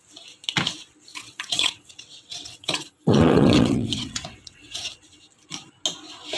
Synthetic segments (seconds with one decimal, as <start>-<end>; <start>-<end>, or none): 1.1-4.9